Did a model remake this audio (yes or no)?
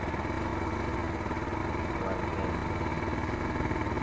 no